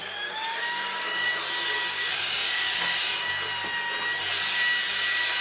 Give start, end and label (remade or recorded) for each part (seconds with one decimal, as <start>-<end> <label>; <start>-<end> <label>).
0.0-1.3 remade; 1.3-2.0 recorded; 2.0-3.3 remade; 3.3-5.4 recorded